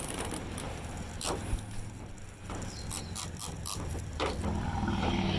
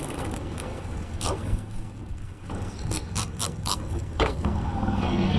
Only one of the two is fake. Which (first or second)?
second